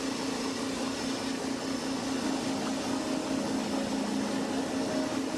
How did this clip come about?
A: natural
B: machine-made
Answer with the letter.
A